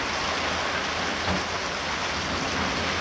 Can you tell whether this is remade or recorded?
recorded